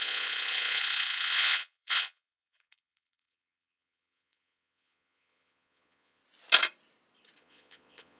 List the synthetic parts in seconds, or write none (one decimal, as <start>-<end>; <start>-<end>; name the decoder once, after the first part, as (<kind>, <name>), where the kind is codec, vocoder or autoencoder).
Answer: 0.0-6.2 (vocoder, Vocos); 7.4-8.2